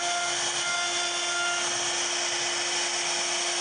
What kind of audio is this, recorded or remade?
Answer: recorded